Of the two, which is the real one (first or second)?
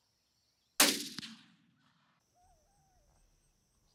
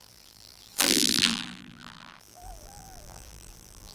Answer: first